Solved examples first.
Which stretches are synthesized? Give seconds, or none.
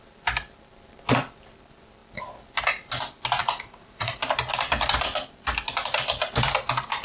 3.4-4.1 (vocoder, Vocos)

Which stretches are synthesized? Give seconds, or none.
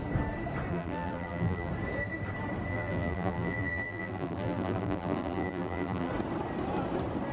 0.7-1.7 (vocoder, BigVGAN v2); 2.7-6.1